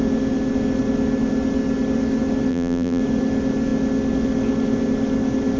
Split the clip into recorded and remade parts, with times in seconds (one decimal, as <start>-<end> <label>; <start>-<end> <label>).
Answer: 0.0-2.5 recorded; 2.5-3.0 remade; 3.0-5.6 recorded